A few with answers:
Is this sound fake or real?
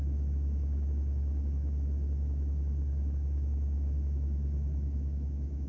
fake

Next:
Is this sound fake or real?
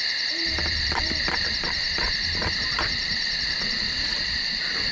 fake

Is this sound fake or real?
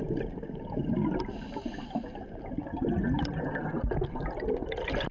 real